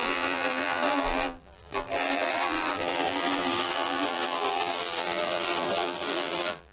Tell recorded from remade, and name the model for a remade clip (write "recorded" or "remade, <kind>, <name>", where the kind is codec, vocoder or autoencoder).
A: remade, vocoder, BigVGAN v2